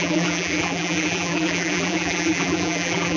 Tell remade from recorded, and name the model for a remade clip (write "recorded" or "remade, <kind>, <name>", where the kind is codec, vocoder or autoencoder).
remade, vocoder, BigVGAN v2